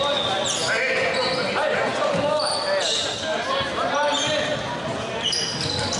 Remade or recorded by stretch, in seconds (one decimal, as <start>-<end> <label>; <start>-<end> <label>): 0.0-6.0 recorded